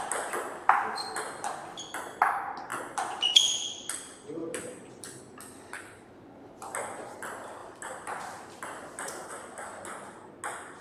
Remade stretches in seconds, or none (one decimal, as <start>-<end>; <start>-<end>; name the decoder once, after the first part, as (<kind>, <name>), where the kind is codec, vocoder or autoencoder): 2.7-3.4 (vocoder, BigVGAN v2); 4.4-5.2